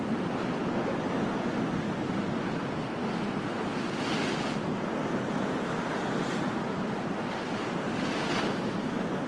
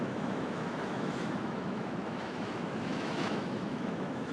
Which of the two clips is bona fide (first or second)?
first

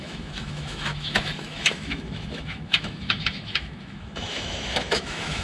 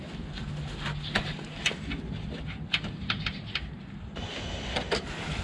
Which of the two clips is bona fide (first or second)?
second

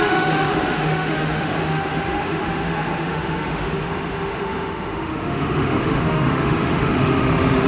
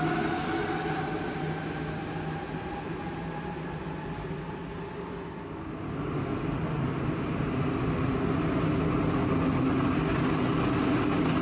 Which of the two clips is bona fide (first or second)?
second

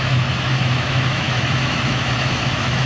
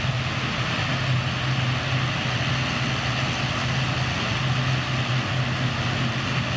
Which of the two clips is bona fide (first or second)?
second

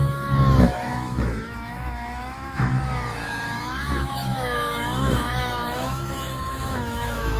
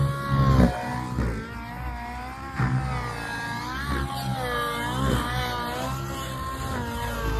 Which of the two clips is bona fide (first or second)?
second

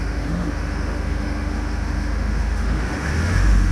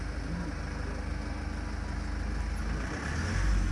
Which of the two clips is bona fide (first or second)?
second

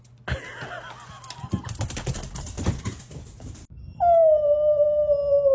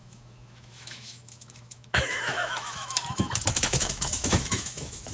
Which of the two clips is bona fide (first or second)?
first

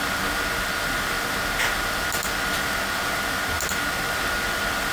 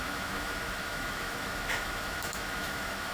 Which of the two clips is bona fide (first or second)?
first